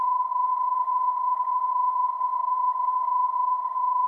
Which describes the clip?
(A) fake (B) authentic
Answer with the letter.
A